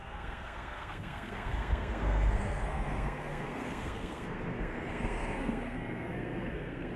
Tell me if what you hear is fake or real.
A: fake